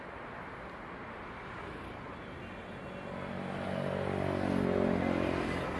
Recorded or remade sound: recorded